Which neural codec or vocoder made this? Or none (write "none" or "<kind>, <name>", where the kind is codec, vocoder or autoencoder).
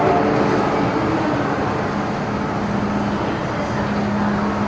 none